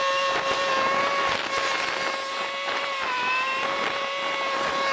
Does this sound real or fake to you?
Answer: real